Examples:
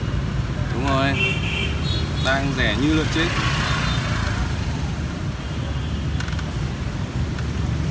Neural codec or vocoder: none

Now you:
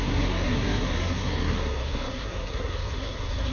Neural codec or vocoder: codec, SNAC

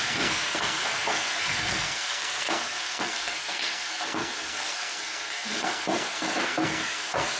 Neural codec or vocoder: codec, SNAC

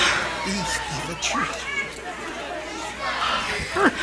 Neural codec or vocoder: none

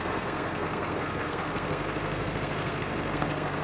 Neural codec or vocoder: codec, SNAC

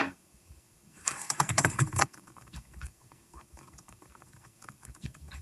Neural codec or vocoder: codec, SNAC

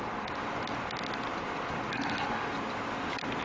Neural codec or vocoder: none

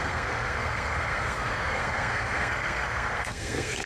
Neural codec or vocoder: codec, SNAC